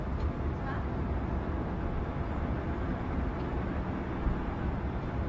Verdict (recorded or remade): recorded